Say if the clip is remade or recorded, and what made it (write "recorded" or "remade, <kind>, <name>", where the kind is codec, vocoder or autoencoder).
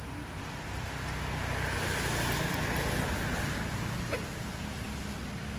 recorded